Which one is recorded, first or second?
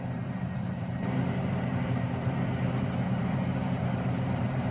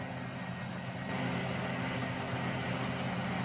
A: second